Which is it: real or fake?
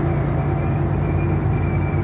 real